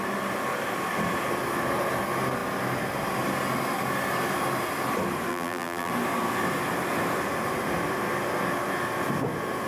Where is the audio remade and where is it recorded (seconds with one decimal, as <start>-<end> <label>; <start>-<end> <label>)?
0.0-5.3 recorded; 5.3-5.9 remade; 5.9-9.7 recorded